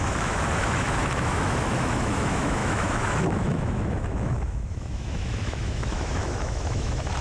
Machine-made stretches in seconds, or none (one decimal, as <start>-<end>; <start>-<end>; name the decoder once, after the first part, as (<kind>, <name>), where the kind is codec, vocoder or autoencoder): 0.0-7.2 (autoencoder, DAC-VAE)